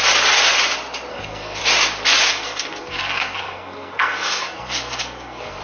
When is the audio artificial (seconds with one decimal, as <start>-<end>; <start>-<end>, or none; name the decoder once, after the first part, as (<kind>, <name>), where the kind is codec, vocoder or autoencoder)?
1.1-1.6 (codec, SNAC); 2.3-5.6